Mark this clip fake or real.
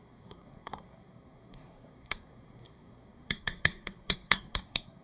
fake